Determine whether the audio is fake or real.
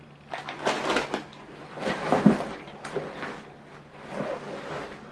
fake